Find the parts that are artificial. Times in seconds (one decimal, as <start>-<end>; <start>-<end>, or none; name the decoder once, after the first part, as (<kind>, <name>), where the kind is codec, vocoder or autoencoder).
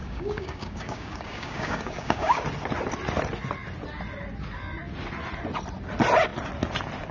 0.0-2.4 (codec, DAC)